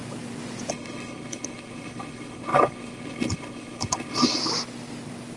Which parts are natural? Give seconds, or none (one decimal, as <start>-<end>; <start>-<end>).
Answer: 0.0-0.7; 4.4-5.4

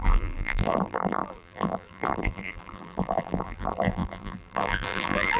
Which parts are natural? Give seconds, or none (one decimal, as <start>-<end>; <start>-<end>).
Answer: none

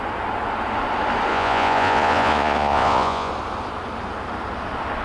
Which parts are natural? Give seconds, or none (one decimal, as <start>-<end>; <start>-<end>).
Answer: 0.0-1.3; 3.3-5.0

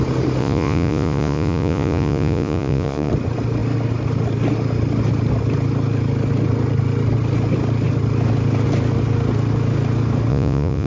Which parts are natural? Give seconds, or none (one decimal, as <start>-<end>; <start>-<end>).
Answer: 0.0-0.4; 3.1-10.3

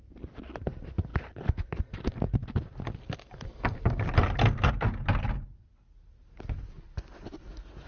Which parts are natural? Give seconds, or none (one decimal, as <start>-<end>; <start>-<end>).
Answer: 0.0-7.9